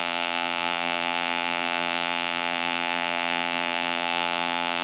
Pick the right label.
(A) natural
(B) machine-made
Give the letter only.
B